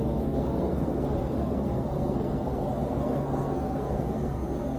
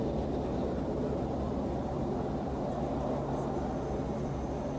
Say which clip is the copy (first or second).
first